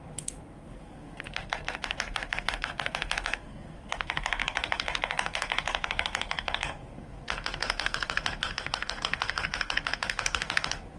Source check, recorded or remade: remade